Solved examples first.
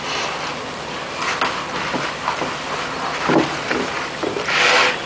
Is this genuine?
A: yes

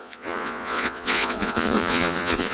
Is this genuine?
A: no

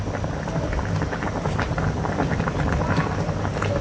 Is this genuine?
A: yes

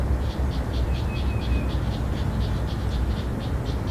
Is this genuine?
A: yes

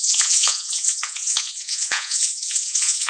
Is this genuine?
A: no